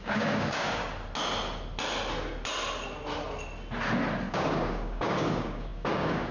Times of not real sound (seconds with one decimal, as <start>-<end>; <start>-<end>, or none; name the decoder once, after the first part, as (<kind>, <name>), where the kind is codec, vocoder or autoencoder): 0.0-0.8 (codec, DAC); 4.3-6.3